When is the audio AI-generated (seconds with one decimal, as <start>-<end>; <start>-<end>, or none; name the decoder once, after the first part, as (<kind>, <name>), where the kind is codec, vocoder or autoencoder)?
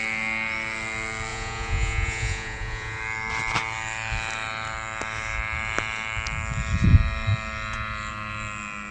1.3-3.0 (vocoder, Vocos)